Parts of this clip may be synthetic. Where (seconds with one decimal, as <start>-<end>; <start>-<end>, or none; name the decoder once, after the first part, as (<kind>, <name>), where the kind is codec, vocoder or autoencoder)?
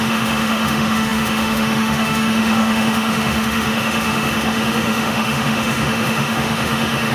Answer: 0.0-7.1 (autoencoder, DAC-VAE)